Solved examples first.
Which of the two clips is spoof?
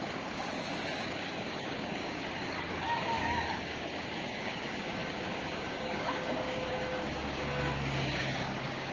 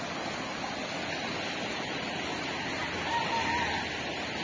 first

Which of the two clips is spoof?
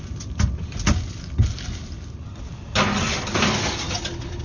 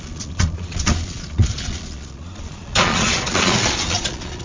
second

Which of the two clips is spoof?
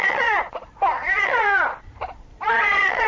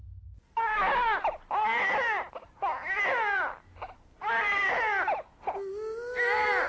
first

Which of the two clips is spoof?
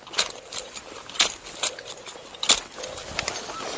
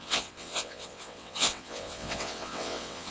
second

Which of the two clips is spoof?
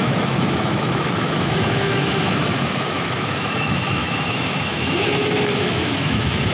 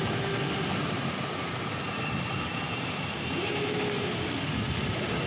first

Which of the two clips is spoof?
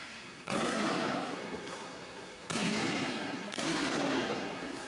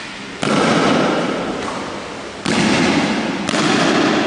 first